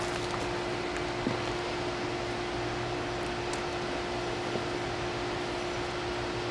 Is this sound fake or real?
real